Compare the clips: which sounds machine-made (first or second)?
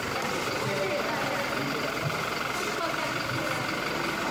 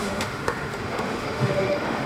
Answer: second